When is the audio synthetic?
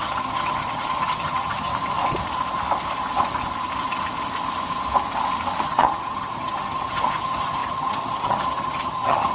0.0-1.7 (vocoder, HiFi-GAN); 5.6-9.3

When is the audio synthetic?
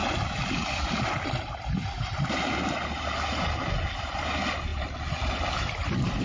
none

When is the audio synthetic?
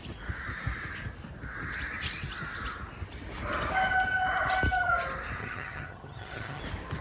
5.4-6.6 (vocoder, HiFi-GAN)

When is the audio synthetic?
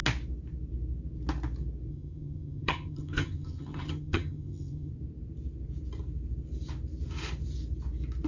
1.9-4.9 (vocoder, HiFi-GAN)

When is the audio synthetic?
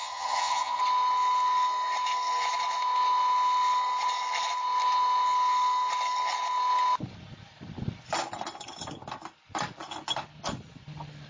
0.0-0.8 (vocoder, HiFi-GAN)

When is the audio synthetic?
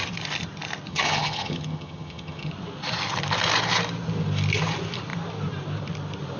0.9-2.5 (vocoder, HiFi-GAN)